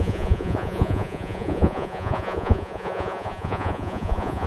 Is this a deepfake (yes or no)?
yes